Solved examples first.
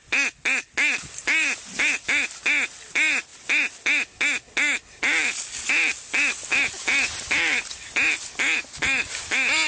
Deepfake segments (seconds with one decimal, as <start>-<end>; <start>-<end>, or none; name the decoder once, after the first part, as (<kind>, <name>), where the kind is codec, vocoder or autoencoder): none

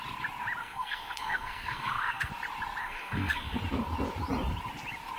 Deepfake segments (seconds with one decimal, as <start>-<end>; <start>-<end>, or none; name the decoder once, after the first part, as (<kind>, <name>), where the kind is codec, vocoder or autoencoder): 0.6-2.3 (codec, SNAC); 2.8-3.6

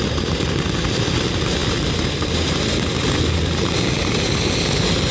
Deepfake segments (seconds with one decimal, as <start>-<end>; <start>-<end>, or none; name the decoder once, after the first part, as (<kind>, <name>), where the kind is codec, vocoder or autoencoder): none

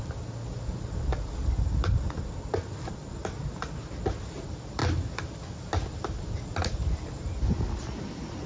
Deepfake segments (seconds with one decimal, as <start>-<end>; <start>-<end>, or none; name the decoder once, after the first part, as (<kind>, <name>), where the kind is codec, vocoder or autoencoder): none

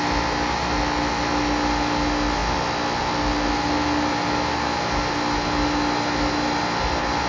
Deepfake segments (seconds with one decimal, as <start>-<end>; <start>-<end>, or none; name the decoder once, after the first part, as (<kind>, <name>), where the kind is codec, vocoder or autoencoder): none

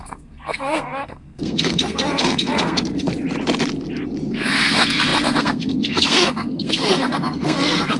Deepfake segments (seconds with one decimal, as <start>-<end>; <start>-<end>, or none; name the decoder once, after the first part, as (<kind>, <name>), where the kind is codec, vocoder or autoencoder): 0.0-3.1 (codec, SNAC); 4.3-8.0